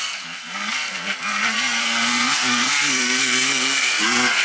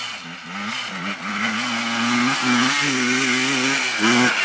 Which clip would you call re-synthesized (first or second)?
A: first